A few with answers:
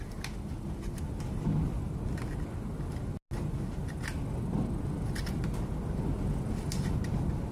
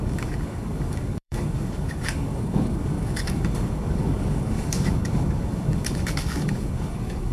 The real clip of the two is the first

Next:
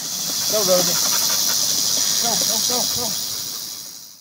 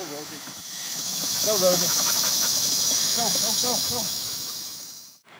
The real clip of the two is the first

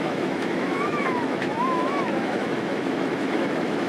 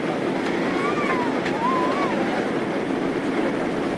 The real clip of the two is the second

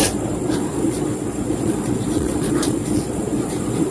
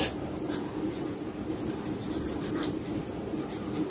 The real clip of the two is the second